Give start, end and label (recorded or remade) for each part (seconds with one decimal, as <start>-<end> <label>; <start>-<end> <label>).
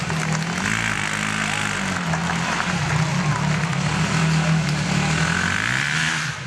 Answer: 0.0-6.5 recorded